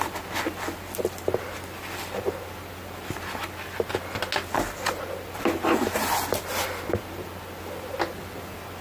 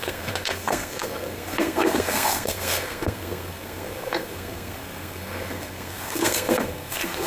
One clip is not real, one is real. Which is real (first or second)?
first